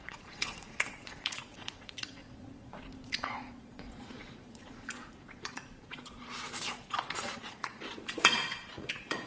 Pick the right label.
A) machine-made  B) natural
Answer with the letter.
A